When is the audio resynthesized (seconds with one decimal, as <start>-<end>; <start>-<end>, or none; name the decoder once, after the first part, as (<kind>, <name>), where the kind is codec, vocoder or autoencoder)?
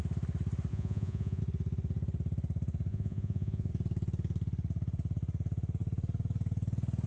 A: 0.7-1.4 (vocoder, Vocos); 2.9-3.7